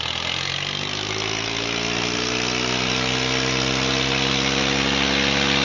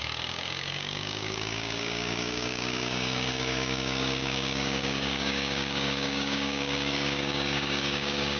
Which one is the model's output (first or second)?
second